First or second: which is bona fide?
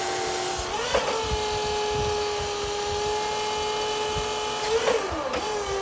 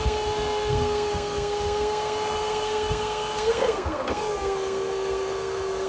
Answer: first